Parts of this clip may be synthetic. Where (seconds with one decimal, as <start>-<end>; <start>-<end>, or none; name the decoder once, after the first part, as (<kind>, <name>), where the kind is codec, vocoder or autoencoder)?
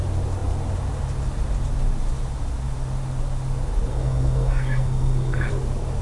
3.9-5.5 (codec, SNAC)